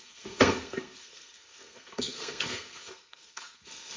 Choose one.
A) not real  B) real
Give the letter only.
A